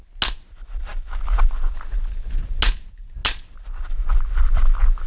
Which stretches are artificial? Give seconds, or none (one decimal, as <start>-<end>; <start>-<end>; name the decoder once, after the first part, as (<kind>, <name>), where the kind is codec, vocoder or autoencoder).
none

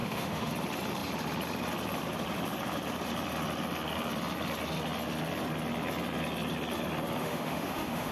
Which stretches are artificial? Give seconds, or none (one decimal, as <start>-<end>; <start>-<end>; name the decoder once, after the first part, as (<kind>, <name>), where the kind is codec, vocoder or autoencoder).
0.0-0.5 (autoencoder, DAC-VAE); 7.2-8.1

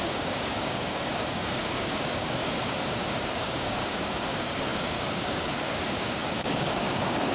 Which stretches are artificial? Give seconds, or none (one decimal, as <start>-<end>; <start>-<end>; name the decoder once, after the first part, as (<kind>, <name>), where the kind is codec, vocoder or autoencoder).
0.0-7.3 (codec, DAC)

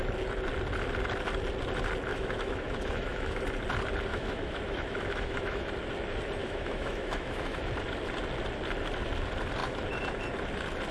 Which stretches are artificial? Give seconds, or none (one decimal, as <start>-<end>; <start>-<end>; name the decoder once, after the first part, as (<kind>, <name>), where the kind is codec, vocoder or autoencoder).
2.1-3.4 (autoencoder, DAC-VAE); 4.1-5.7; 6.4-7.6

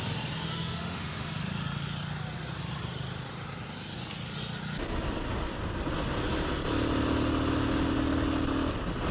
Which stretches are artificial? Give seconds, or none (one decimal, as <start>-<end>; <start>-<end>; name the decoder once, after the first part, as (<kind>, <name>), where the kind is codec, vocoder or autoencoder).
0.5-1.4 (autoencoder, DAC-VAE)

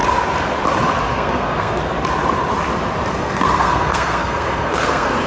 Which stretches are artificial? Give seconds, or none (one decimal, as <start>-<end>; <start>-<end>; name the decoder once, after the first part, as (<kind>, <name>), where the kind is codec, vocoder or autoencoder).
1.1-1.8 (codec, SNAC); 3.1-5.3

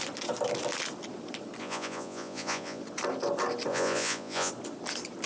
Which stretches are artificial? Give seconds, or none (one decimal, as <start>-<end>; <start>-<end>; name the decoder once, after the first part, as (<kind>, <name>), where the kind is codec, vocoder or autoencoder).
1.6-2.8 (vocoder, Vocos); 3.7-4.5